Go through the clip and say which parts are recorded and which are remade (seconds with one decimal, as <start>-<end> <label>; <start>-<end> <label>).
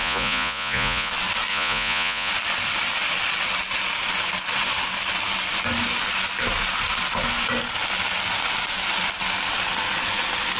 0.0-1.1 remade; 1.1-1.5 recorded; 1.5-2.3 remade; 2.3-10.6 recorded